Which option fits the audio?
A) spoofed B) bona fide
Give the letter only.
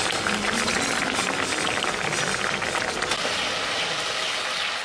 B